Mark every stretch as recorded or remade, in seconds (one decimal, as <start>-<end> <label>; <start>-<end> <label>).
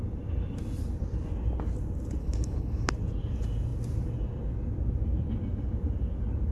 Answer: 0.0-2.2 recorded; 2.2-2.9 remade; 2.9-6.5 recorded